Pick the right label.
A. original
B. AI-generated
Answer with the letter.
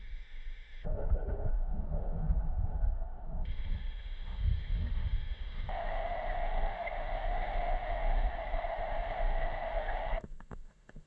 B